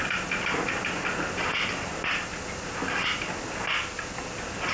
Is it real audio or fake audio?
real